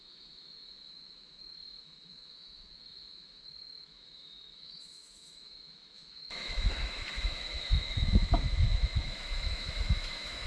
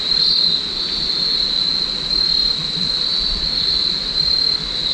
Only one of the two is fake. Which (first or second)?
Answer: first